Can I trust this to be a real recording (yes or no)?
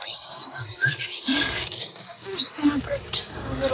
no